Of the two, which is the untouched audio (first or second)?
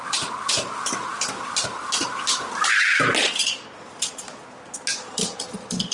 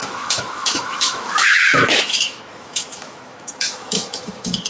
first